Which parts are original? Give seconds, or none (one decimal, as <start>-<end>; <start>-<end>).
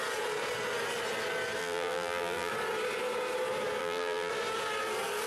0.0-1.6; 2.5-3.8; 4.3-5.3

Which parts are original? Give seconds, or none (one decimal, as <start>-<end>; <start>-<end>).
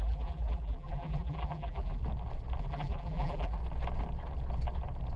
2.0-2.6; 3.6-5.2